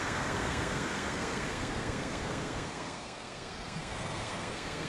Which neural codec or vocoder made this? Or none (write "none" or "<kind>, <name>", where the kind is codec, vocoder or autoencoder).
codec, SNAC